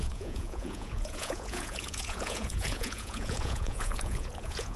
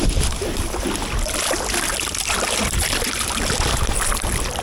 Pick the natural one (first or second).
second